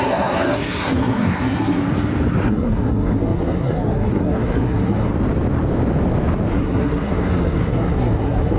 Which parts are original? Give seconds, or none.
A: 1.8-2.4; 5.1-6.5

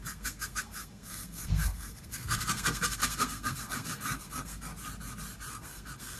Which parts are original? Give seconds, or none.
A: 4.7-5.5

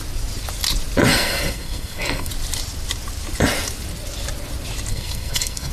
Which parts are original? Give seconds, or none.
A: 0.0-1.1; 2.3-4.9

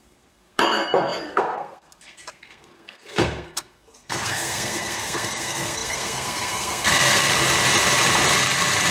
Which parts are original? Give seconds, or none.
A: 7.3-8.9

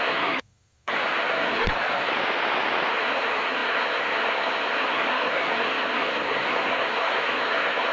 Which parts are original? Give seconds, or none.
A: 2.1-2.9

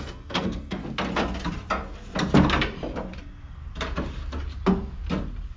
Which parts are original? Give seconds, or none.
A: 0.8-3.2; 3.6-5.6

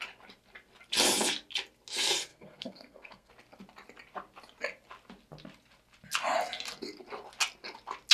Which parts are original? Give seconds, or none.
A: 0.0-2.3; 3.3-8.1